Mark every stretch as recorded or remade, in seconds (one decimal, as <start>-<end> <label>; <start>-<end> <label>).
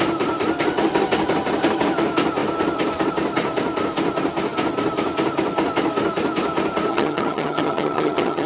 0.0-6.9 recorded; 6.9-8.5 remade